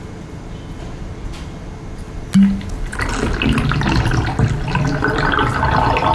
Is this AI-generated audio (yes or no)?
no